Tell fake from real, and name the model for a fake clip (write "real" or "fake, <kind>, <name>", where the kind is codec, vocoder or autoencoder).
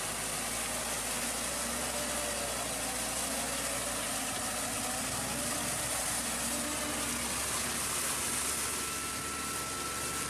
real